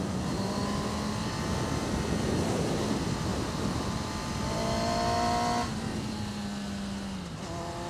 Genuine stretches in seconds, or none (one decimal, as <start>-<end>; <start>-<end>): 0.6-3.3; 4.1-7.9